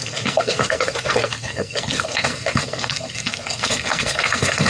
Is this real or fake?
fake